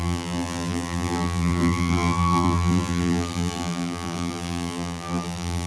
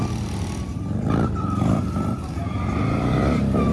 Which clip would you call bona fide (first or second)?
second